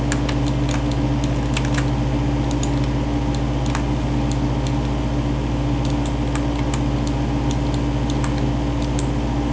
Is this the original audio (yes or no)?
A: yes